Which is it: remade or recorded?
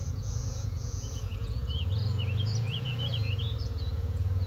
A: remade